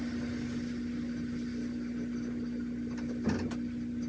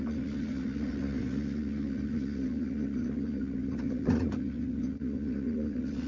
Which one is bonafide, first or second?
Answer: first